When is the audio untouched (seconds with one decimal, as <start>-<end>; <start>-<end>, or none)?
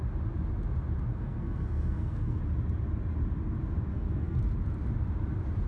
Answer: 0.0-1.1; 2.4-3.9; 4.4-5.7